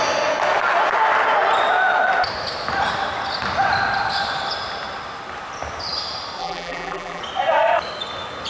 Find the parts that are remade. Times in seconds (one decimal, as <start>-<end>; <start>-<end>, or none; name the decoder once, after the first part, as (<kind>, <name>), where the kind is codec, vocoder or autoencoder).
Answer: 6.4-7.2 (vocoder, BigVGAN v2)